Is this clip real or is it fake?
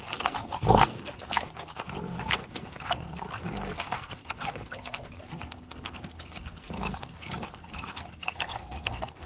fake